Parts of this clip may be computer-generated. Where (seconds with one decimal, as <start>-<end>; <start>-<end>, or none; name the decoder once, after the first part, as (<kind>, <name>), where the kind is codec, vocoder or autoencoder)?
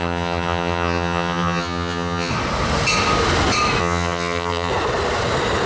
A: 0.0-2.3 (vocoder, HiFi-GAN); 3.8-4.7